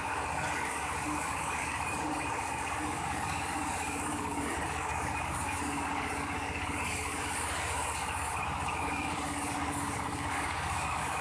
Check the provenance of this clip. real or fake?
fake